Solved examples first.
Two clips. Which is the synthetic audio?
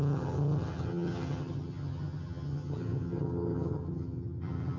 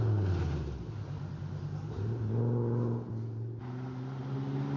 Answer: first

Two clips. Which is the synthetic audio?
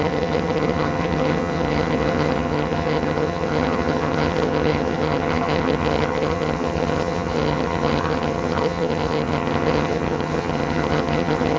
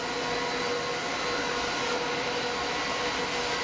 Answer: first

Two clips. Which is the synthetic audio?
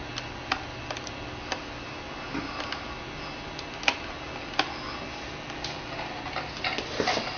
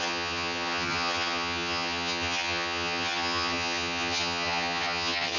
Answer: second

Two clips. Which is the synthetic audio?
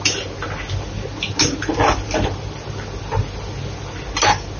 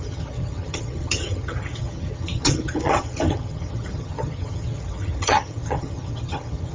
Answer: second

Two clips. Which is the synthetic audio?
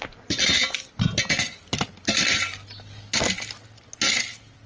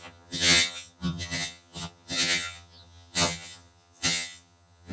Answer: second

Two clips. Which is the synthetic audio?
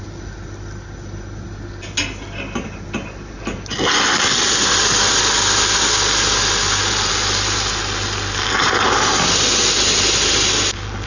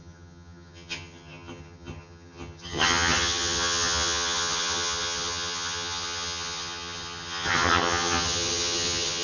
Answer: second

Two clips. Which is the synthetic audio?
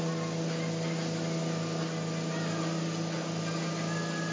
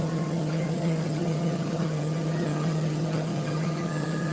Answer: second